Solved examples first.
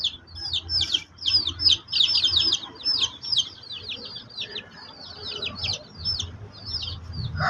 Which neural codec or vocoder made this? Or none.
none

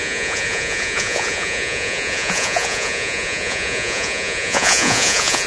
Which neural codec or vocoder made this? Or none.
vocoder, Vocos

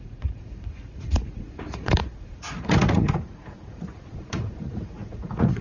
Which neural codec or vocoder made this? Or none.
vocoder, Vocos